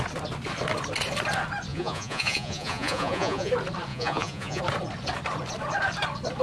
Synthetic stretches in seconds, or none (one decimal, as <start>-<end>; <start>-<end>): 1.7-3.5; 3.9-4.6